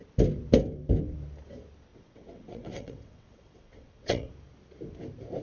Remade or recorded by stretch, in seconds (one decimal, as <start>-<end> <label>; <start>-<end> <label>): 0.0-1.9 recorded; 1.9-4.3 remade; 4.3-5.4 recorded